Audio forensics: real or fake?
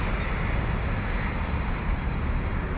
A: real